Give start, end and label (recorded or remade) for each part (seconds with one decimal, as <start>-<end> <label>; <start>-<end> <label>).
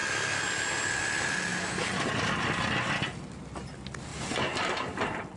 0.0-1.5 recorded; 1.5-2.1 remade; 2.1-4.1 recorded; 4.1-5.0 remade; 5.0-5.4 recorded